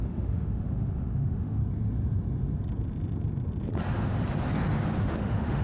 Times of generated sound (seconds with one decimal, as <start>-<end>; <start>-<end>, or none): 0.0-1.6; 5.0-5.6